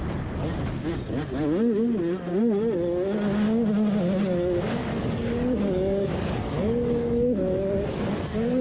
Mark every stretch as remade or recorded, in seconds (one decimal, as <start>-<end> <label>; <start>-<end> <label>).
0.0-4.8 recorded; 4.8-8.0 remade; 8.0-8.6 recorded